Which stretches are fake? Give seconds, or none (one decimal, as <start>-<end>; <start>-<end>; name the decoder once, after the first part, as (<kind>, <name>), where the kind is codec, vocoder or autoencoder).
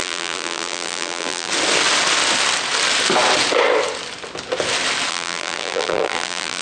0.0-1.5 (vocoder, BigVGAN v2); 5.1-6.6